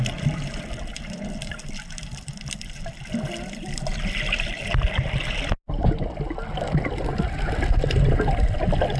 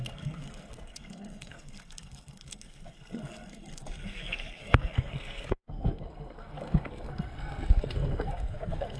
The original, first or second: first